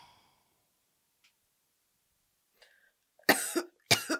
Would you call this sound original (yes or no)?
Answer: yes